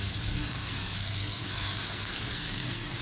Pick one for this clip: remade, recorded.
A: remade